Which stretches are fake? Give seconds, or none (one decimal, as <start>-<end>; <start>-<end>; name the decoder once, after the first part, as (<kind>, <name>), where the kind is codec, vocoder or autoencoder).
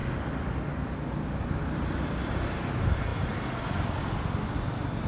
none